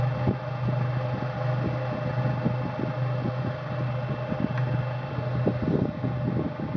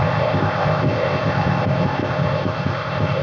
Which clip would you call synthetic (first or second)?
second